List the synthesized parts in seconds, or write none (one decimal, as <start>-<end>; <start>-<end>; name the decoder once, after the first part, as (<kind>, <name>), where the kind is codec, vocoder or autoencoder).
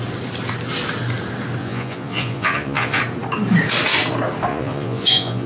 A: 1.6-3.0 (vocoder, Vocos); 4.5-5.5